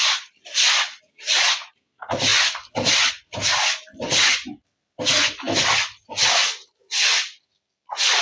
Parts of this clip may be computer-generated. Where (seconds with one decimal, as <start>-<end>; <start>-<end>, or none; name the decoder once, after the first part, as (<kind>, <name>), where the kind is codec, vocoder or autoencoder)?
none